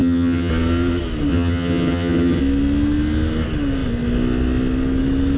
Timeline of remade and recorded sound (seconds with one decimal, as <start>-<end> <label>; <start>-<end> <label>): 0.0-0.5 remade; 0.5-1.3 recorded; 1.3-2.4 remade; 2.4-5.4 recorded